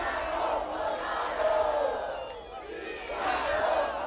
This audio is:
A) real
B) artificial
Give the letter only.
A